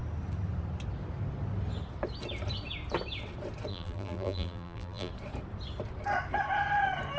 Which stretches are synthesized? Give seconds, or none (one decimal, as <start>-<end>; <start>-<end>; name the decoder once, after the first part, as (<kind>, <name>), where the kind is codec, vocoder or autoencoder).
3.7-5.1 (vocoder, BigVGAN v2)